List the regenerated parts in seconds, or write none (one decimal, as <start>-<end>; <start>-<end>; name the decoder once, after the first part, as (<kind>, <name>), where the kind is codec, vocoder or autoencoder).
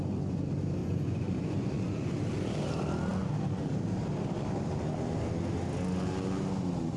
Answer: 0.8-2.1 (vocoder, Vocos)